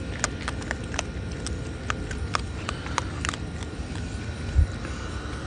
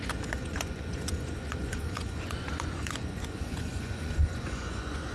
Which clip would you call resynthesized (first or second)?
second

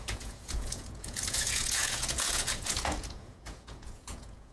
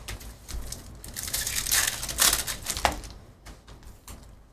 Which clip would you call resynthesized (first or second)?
first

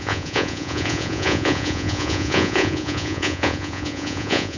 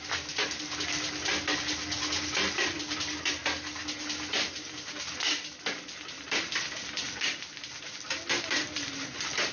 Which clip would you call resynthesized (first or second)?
first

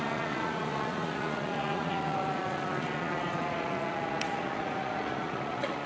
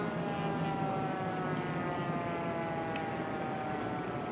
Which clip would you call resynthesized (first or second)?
first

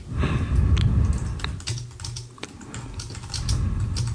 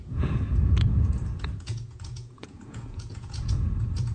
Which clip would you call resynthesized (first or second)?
second